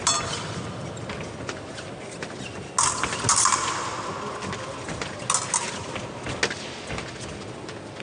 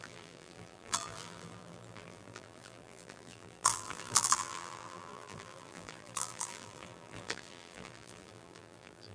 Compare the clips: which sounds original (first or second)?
first